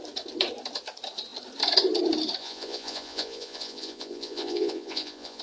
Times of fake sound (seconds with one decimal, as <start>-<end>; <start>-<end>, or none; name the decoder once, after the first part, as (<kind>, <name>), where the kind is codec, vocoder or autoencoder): 2.4-5.4 (vocoder, Vocos)